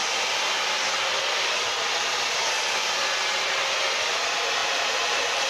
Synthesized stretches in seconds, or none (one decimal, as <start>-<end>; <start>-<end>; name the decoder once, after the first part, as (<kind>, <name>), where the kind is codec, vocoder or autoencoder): 4.6-5.5 (vocoder, BigVGAN v2)